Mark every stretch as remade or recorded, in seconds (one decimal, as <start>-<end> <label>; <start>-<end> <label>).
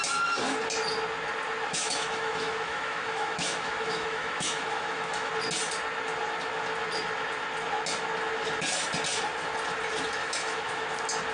0.0-1.7 recorded; 1.7-5.3 remade; 5.3-10.2 recorded; 10.2-10.9 remade; 10.9-11.3 recorded